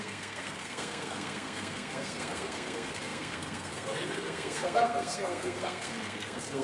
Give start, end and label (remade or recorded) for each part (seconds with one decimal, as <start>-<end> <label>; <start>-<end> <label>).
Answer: 0.0-6.6 remade

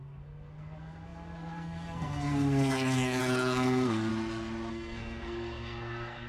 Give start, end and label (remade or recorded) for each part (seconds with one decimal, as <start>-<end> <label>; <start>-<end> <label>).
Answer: 0.0-4.1 remade; 4.1-4.7 recorded; 4.7-6.3 remade

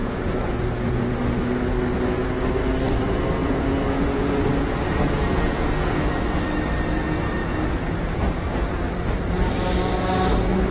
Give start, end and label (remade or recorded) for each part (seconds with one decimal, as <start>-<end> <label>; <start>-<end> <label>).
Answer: 0.0-1.1 remade; 1.1-3.4 recorded; 3.4-6.0 remade; 6.0-7.4 recorded; 7.4-8.8 remade; 8.8-10.7 recorded